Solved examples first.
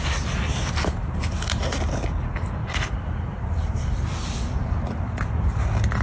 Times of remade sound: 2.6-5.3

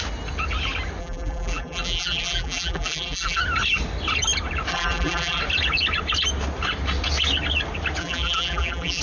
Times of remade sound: 1.0-3.4; 4.7-5.4; 8.0-9.0

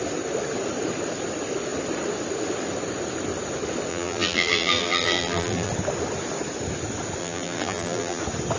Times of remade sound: 3.9-5.7; 7.2-8.2

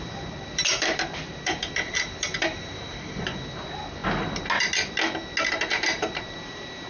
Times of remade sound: 0.0-4.0; 6.2-6.9

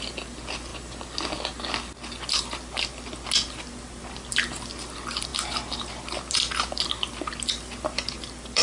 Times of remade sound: 0.0-0.7; 2.4-8.6

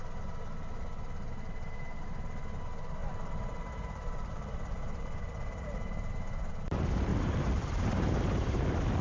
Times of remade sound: 3.0-6.5; 7.1-8.6

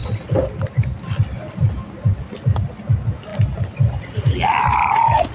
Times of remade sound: none